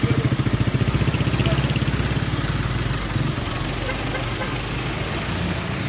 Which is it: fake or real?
real